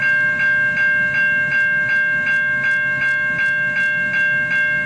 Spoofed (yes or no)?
no